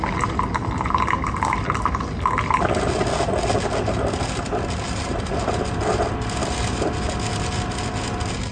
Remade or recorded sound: recorded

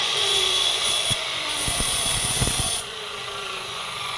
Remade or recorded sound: remade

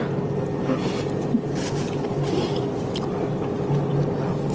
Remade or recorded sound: recorded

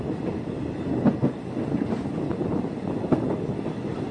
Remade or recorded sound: recorded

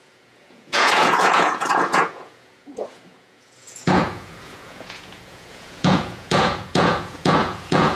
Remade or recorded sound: remade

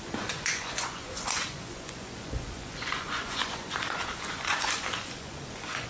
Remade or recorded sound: remade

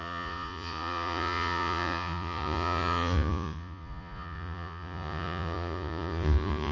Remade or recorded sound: remade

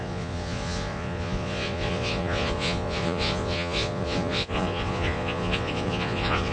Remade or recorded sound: remade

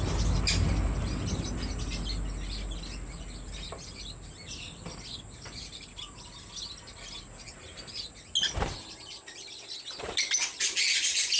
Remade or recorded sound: recorded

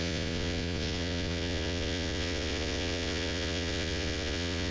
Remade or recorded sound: remade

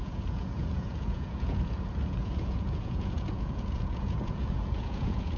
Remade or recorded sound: remade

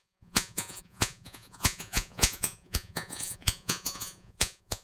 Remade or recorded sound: remade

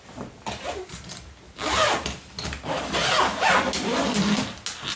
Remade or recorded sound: recorded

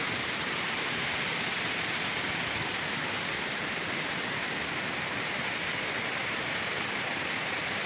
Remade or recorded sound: recorded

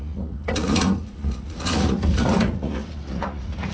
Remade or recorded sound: remade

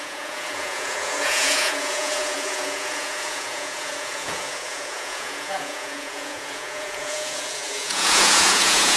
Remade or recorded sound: remade